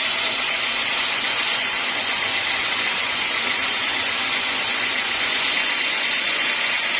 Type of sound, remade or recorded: remade